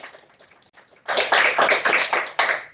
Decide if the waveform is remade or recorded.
remade